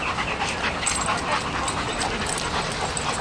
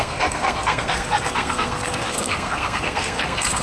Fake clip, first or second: second